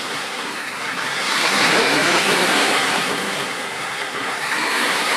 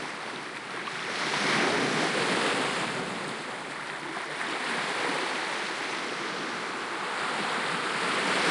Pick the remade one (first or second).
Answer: first